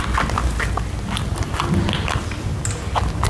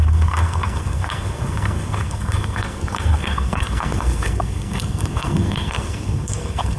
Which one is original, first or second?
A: first